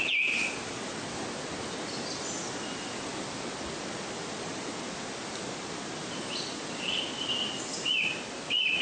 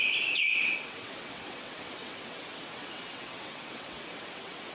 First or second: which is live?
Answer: first